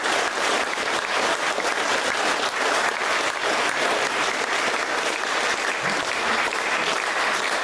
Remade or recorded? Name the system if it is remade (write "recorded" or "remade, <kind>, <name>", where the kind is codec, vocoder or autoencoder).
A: recorded